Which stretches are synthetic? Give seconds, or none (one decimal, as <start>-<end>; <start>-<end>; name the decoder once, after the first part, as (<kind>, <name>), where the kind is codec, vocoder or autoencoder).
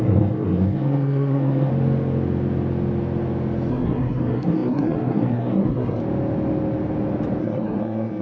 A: 0.0-1.7 (codec, SNAC); 3.7-6.0; 7.4-8.2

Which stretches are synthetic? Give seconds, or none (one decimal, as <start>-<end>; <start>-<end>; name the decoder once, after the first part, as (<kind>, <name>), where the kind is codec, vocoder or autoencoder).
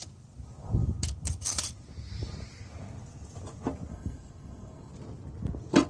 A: 3.9-4.9 (codec, SNAC)